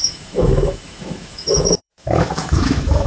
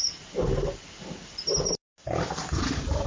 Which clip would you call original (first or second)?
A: second